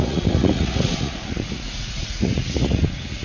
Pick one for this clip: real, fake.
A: fake